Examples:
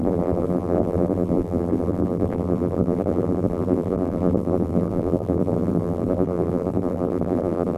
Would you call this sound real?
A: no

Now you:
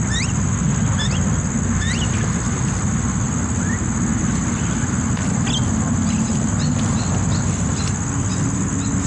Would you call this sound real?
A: yes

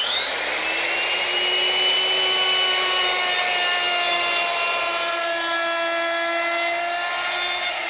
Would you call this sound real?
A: yes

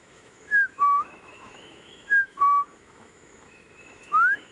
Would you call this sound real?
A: no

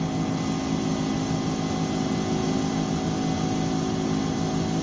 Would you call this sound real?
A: yes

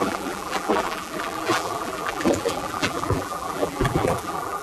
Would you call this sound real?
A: no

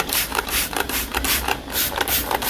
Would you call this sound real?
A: no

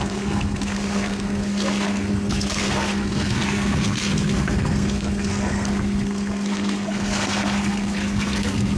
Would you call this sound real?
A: no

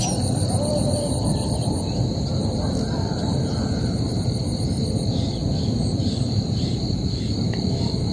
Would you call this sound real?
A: no